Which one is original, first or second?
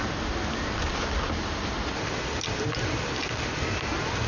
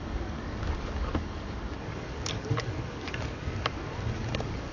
first